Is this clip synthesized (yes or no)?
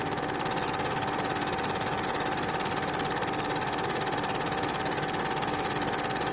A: no